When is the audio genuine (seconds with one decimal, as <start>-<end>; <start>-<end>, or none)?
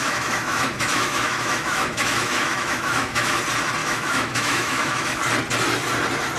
3.4-3.8; 5.2-6.4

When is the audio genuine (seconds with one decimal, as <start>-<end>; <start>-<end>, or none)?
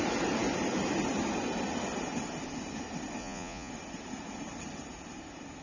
0.0-3.2; 3.7-5.6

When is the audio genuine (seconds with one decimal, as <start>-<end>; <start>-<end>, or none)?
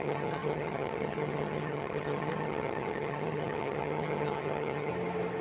4.9-5.4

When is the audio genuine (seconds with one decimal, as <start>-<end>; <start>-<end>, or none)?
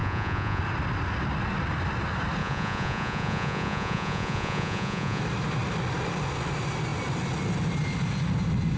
0.6-2.4; 5.2-8.8